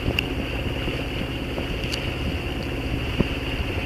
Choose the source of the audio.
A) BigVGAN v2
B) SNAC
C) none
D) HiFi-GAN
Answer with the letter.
C